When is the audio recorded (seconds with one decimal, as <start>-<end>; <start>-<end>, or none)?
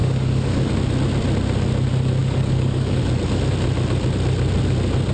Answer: 0.7-2.2; 3.0-5.1